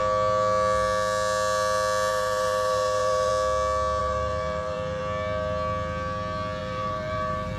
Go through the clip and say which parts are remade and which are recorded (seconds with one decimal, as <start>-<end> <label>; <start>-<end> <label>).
0.0-2.1 recorded; 2.1-3.3 remade; 3.3-4.0 recorded; 4.0-5.0 remade; 5.0-6.6 recorded; 6.6-7.6 remade